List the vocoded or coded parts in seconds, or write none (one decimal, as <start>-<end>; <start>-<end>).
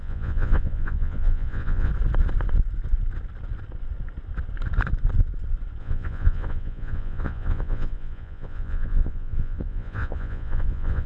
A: 0.0-1.9; 5.8-11.1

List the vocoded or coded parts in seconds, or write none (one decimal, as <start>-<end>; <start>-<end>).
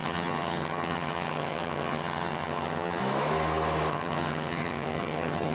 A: 0.0-3.0; 3.9-5.5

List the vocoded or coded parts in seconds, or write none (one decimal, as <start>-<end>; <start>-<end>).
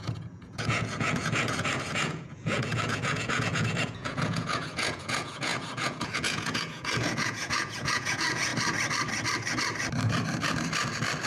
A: 0.0-8.5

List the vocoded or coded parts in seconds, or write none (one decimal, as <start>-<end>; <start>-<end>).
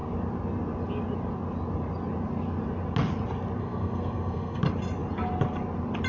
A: 3.6-4.6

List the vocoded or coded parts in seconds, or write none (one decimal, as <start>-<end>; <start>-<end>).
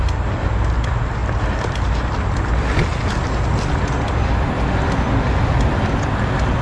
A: none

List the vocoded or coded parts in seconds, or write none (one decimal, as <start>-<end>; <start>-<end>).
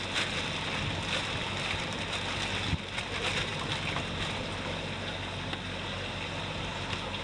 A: none